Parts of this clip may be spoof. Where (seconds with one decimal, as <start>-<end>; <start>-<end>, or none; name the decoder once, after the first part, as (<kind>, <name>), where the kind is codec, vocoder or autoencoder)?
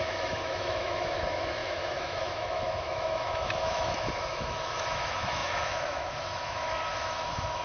0.0-7.6 (autoencoder, DAC-VAE)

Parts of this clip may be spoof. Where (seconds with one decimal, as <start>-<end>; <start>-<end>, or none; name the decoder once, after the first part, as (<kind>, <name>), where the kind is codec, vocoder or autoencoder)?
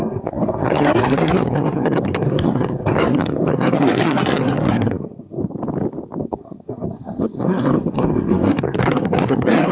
0.0-5.4 (codec, SNAC); 6.2-9.7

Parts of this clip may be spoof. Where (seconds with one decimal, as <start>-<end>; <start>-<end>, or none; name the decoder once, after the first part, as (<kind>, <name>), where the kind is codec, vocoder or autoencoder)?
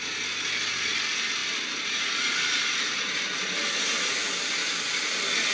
none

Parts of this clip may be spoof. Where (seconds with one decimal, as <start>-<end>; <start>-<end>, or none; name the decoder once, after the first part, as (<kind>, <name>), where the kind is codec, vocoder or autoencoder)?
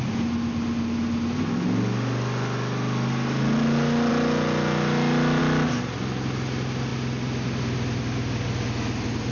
none